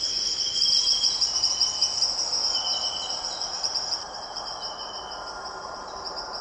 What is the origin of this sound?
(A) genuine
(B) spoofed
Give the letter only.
A